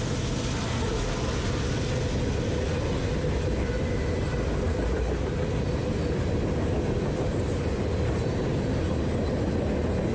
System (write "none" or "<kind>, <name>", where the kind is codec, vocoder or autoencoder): none